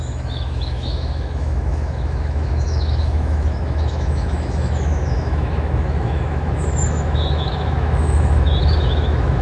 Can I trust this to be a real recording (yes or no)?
no